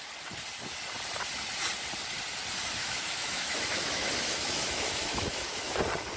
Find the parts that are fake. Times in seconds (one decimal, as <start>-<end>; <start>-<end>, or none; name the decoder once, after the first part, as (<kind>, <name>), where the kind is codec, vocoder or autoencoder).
2.8-5.8 (autoencoder, DAC-VAE)